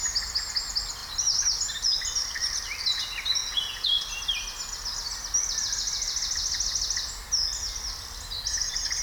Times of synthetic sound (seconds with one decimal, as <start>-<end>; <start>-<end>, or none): 3.4-4.0